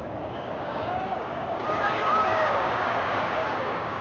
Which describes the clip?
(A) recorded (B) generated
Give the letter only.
B